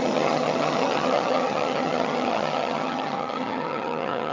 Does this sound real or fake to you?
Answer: fake